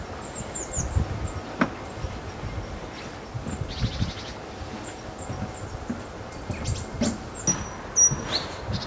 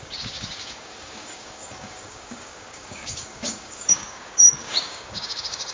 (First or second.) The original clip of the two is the first